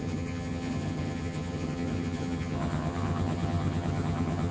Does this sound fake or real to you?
fake